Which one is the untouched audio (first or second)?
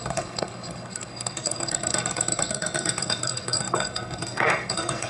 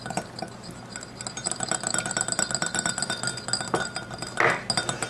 second